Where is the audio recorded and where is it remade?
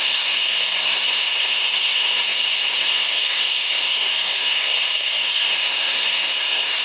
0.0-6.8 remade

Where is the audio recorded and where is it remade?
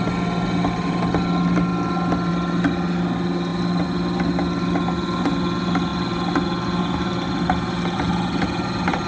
0.0-9.1 recorded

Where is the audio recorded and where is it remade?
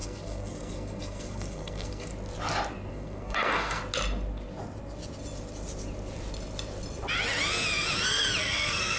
0.0-2.1 remade; 2.1-2.9 recorded; 2.9-3.8 remade; 3.8-8.4 recorded; 8.4-9.0 remade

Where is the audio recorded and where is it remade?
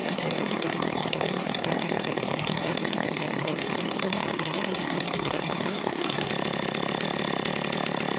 0.0-6.3 remade; 6.3-8.2 recorded